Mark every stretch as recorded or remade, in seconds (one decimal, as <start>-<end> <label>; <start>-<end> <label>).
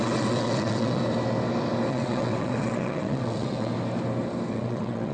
0.0-1.0 remade; 1.0-1.9 recorded; 1.9-3.7 remade; 3.7-4.5 recorded; 4.5-5.1 remade